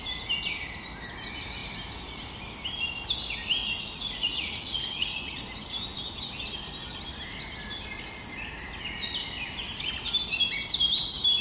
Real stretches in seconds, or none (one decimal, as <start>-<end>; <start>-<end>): 0.0-3.6; 5.4-11.4